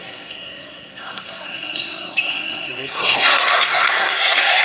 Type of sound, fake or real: fake